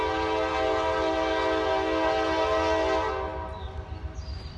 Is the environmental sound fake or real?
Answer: real